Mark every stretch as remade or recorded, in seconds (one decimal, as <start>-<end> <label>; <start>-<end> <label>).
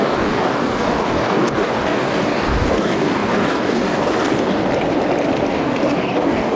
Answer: 0.0-4.6 remade; 4.6-5.5 recorded; 5.5-6.6 remade